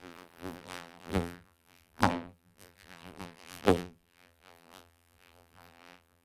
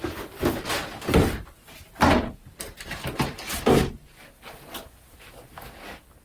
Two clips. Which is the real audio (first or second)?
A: second